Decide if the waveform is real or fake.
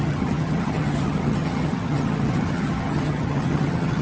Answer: fake